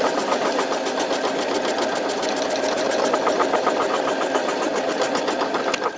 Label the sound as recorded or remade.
recorded